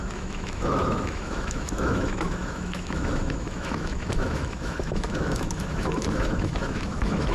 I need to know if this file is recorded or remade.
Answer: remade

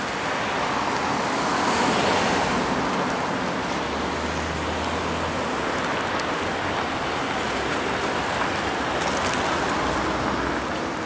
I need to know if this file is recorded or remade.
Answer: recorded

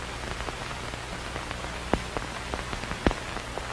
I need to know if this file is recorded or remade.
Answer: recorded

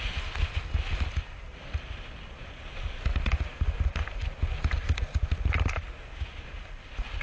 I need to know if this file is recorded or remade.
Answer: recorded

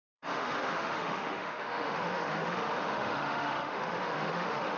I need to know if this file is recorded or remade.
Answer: remade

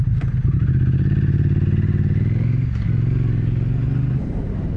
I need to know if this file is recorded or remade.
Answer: recorded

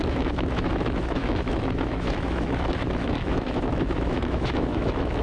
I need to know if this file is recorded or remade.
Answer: remade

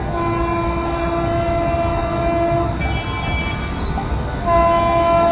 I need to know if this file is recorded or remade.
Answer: recorded